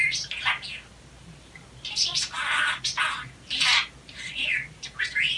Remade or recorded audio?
recorded